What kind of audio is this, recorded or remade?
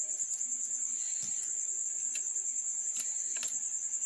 recorded